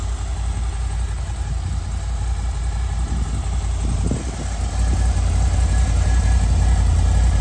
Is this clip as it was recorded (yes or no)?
yes